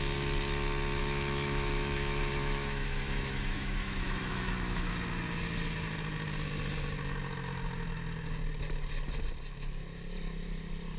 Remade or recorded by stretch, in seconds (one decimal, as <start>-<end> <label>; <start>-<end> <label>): 0.0-1.0 recorded; 1.0-4.9 remade; 4.9-11.0 recorded